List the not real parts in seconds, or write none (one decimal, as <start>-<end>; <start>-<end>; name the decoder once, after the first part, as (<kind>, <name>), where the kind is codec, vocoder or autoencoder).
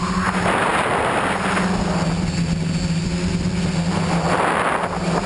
none